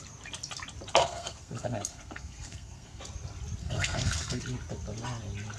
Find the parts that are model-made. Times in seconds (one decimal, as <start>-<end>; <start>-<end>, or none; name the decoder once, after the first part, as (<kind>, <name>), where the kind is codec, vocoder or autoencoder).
1.0-3.0 (codec, SNAC); 3.6-4.4